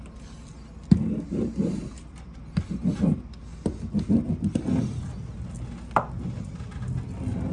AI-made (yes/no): no